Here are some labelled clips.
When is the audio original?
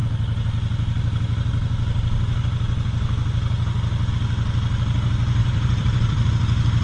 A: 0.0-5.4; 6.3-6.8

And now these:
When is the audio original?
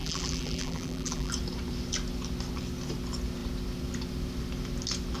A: 1.3-5.2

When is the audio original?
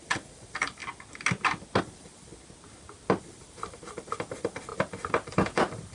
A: 0.8-1.8; 2.3-3.2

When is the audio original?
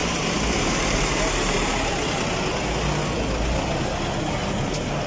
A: 1.9-4.4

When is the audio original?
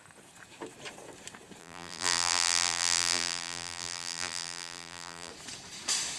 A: 0.0-1.6; 5.3-6.2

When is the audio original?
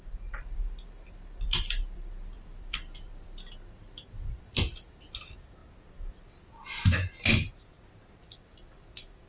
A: 5.6-8.2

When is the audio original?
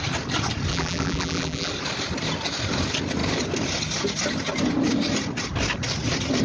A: 0.0-0.7; 1.7-6.4